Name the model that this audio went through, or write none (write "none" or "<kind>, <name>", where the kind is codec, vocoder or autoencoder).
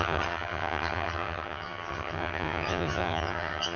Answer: vocoder, HiFi-GAN